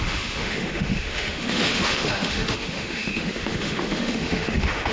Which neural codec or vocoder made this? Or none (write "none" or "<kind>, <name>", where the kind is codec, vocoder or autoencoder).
autoencoder, DAC-VAE